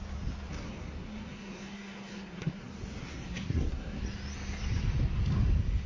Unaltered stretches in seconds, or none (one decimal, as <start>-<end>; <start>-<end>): 0.0-0.5; 4.0-5.9